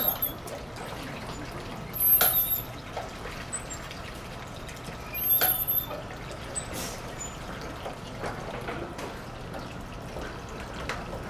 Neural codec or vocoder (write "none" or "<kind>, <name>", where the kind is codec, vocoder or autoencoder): none